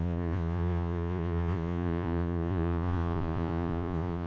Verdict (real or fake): fake